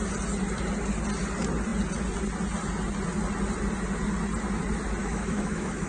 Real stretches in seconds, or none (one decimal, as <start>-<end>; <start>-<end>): 0.0-5.0